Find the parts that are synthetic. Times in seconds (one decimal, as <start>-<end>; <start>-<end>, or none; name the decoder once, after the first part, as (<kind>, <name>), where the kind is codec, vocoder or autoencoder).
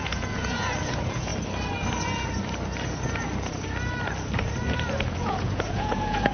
0.0-1.3 (vocoder, Vocos); 5.1-6.3